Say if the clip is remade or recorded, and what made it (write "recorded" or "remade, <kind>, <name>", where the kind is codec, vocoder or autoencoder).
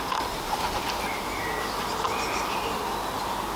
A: recorded